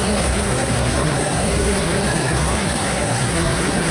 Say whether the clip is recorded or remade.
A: remade